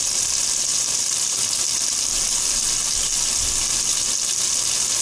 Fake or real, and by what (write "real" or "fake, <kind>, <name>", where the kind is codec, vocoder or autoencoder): real